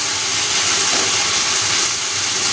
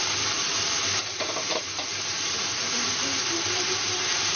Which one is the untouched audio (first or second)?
first